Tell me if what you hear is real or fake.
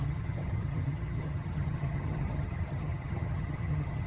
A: fake